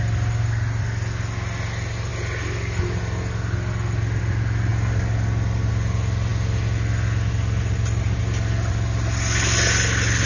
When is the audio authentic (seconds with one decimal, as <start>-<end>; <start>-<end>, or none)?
0.0-10.3